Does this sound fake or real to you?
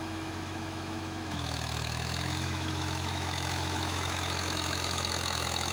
fake